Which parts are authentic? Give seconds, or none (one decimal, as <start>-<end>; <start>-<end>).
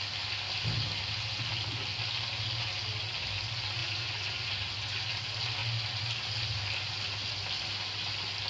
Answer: 0.0-3.8; 4.7-5.6; 6.9-8.5